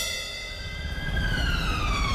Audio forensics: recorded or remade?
remade